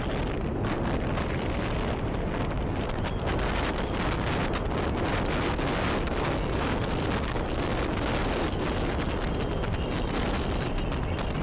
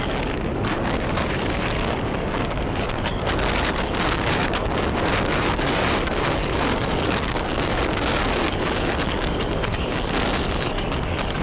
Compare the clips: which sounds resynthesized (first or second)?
second